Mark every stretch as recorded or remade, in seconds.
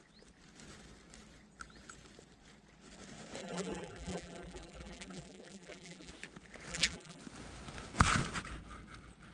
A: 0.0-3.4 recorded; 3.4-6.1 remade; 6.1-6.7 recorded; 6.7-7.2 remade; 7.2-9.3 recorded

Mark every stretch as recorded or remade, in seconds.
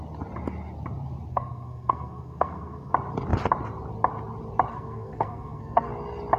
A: 0.0-1.3 recorded; 1.3-2.9 remade; 2.9-4.7 recorded; 4.7-5.9 remade; 5.9-6.4 recorded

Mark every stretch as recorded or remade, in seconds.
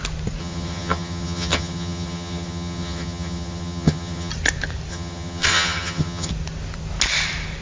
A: 0.0-0.4 recorded; 0.4-4.3 remade; 4.3-4.9 recorded; 4.9-6.3 remade; 6.3-7.6 recorded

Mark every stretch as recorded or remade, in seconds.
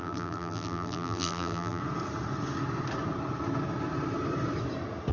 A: 0.0-1.8 remade; 1.8-5.1 recorded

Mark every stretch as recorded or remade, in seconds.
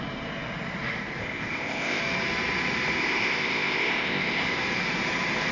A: 0.0-1.2 recorded; 1.2-2.0 remade; 2.0-3.0 recorded; 3.0-4.4 remade; 4.4-5.5 recorded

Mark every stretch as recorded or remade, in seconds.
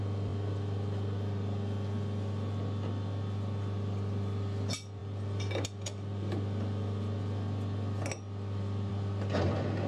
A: 0.0-9.9 recorded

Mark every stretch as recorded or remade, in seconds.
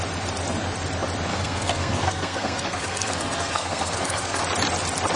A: 0.0-1.3 recorded; 1.3-4.4 remade; 4.4-5.2 recorded